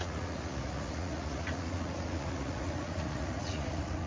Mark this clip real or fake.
fake